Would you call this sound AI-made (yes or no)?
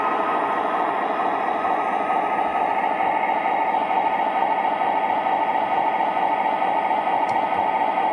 yes